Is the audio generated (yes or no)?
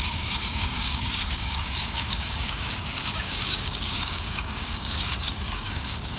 yes